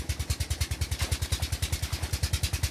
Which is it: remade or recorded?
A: recorded